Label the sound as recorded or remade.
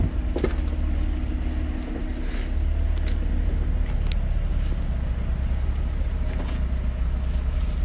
recorded